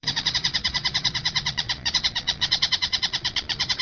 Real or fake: fake